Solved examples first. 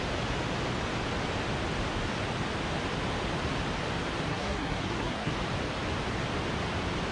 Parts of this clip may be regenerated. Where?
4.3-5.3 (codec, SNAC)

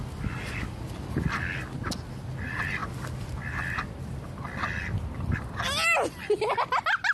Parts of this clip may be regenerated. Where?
none